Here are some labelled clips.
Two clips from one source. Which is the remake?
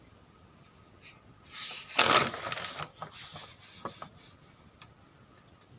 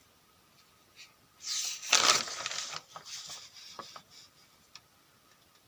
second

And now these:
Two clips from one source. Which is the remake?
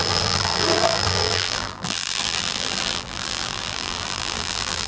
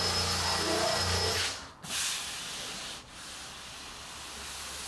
first